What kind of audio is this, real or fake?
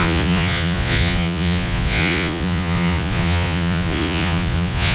fake